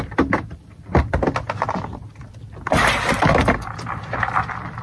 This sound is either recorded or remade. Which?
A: recorded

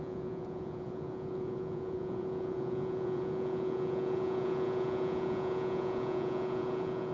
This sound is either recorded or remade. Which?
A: remade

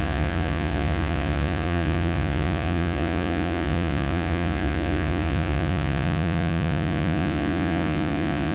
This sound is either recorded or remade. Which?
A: remade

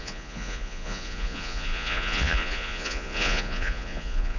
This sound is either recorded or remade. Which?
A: remade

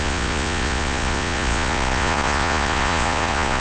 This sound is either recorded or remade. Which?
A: remade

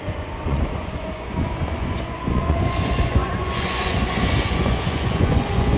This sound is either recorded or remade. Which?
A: remade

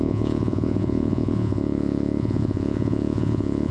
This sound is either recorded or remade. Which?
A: remade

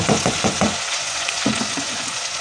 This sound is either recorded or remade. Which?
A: remade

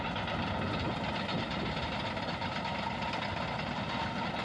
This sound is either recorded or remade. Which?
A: recorded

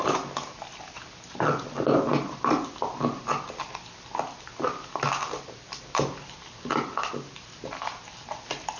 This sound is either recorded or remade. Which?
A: recorded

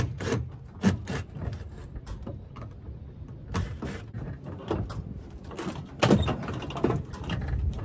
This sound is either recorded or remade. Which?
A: recorded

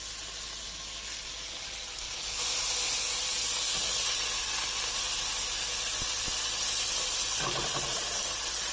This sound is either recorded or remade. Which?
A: recorded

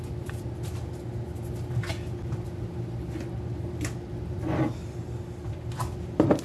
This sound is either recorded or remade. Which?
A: recorded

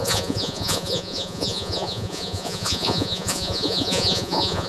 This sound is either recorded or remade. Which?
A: remade